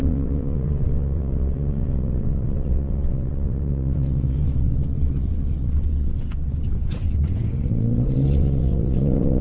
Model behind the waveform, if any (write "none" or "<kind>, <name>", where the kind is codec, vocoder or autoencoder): vocoder, WaveNeXt